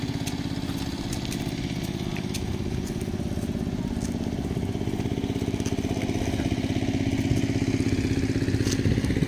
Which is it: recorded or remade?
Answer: recorded